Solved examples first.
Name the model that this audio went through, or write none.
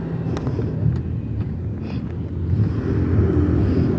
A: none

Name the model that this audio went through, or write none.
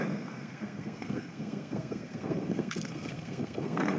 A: codec, SNAC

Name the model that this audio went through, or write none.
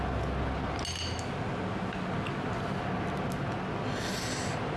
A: none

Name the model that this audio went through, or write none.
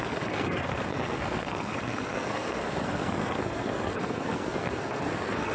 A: codec, SNAC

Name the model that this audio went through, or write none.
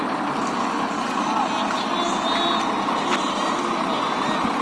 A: none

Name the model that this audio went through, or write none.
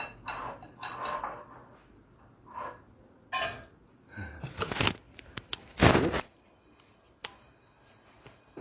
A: none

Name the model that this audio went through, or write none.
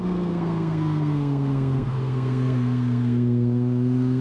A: codec, SNAC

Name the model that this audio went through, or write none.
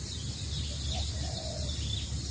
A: none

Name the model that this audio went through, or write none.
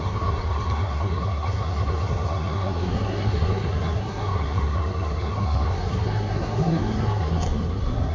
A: codec, SNAC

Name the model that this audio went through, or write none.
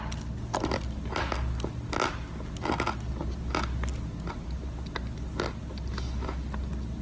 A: none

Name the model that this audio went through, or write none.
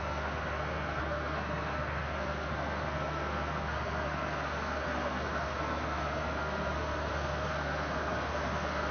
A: codec, SNAC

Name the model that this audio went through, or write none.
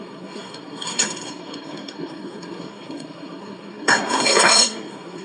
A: codec, SNAC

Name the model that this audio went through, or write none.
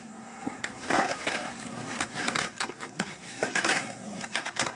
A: codec, SNAC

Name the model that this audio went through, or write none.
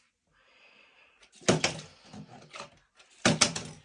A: none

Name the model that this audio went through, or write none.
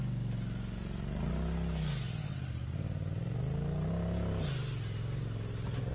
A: none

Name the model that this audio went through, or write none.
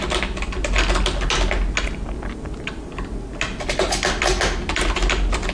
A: none